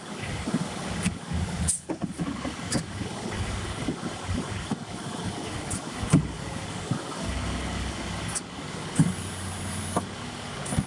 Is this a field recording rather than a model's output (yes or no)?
no